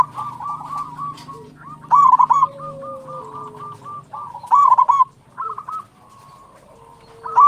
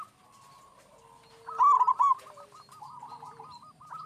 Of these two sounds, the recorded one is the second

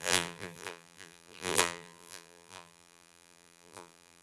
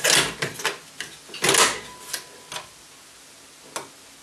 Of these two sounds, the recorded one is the second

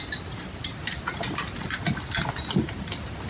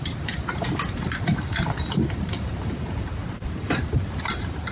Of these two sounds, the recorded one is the first